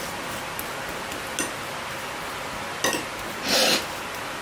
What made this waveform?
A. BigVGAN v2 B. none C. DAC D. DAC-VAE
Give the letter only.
B